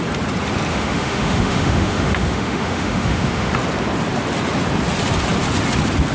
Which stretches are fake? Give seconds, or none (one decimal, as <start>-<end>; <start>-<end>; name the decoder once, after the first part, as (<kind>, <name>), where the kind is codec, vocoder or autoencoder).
0.7-3.5 (autoencoder, DAC-VAE)